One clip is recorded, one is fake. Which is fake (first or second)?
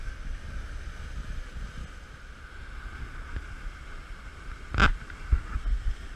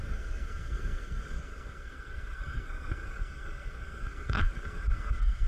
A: second